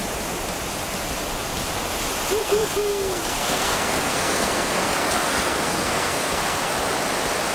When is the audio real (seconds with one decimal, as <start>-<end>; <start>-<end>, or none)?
0.0-2.4; 6.7-7.5